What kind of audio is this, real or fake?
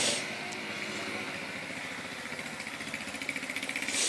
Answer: real